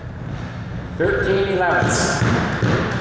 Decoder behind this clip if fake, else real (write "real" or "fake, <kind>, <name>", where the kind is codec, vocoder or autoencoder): real